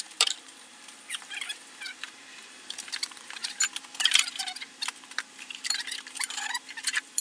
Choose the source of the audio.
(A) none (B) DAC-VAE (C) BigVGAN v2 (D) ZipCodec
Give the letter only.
C